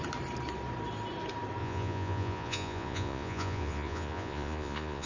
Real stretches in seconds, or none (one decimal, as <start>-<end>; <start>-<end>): 0.0-1.6